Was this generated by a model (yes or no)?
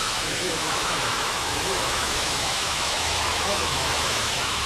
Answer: yes